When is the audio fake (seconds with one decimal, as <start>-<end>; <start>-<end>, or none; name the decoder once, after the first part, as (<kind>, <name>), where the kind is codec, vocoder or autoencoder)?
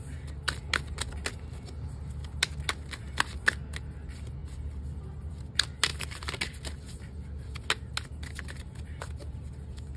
5.9-6.6 (vocoder, BigVGAN v2)